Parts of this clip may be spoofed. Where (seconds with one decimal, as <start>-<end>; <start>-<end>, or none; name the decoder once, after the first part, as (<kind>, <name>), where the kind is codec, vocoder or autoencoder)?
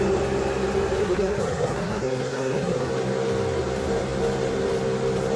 1.0-2.9 (codec, SNAC)